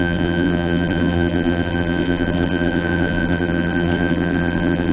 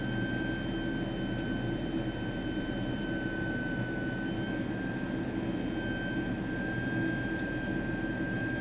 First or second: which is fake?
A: first